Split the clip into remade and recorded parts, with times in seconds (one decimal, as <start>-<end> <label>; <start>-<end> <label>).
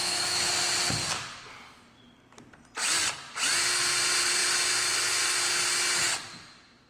0.0-0.5 remade; 0.5-6.9 recorded